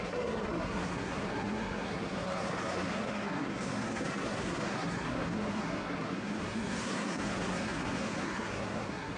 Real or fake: fake